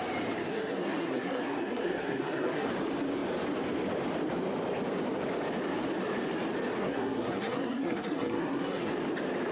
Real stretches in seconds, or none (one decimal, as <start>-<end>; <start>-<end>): 0.0-0.5; 2.7-6.8; 8.9-9.5